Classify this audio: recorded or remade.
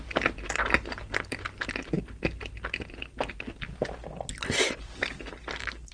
recorded